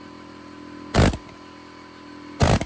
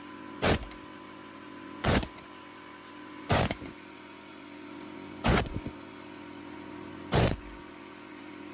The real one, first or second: first